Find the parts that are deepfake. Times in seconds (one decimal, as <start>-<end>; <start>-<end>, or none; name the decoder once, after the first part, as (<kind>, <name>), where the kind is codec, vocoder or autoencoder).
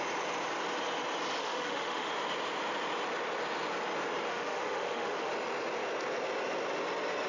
1.4-2.1 (autoencoder, DAC-VAE); 4.3-5.3